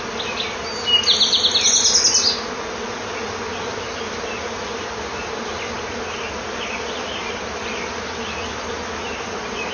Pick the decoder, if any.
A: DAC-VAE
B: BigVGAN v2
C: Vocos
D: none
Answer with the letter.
D